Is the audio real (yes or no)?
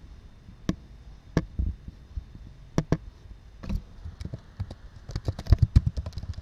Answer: yes